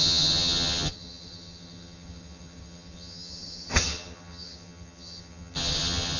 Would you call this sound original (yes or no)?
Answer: no